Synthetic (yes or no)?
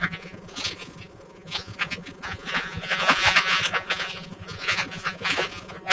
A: yes